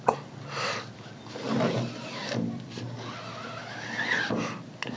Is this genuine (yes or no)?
yes